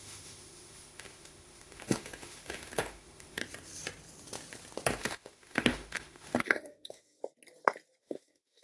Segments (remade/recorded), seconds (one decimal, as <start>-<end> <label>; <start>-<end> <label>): 0.0-3.4 remade; 3.4-5.0 recorded; 5.0-7.2 remade; 7.2-8.0 recorded; 8.0-8.6 remade